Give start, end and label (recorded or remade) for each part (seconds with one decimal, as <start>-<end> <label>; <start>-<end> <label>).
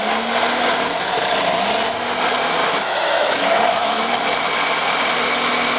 0.0-2.6 recorded; 2.6-4.1 remade; 4.1-5.8 recorded